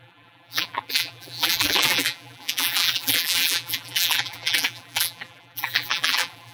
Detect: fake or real fake